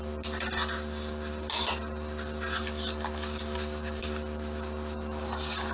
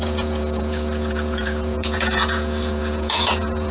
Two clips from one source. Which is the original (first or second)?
first